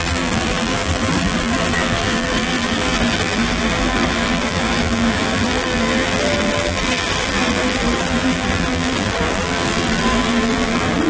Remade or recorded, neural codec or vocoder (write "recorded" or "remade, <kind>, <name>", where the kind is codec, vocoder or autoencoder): remade, vocoder, BigVGAN v2